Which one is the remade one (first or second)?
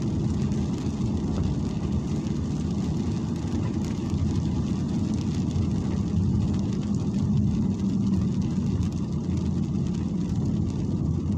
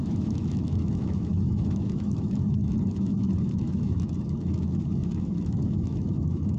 second